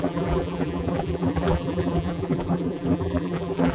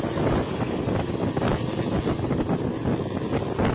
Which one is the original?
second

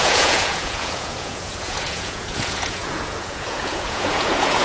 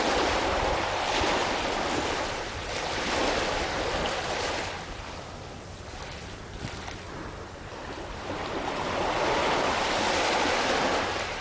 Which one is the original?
second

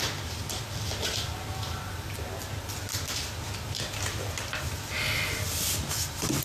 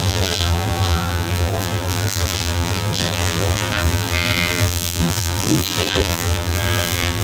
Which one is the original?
first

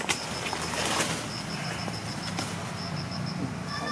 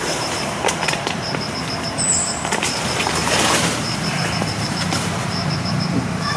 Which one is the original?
first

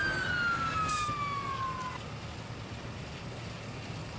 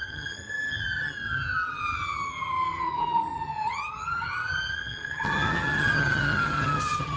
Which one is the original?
first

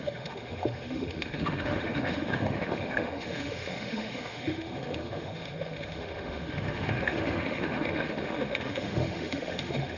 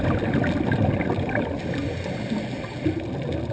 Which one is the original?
second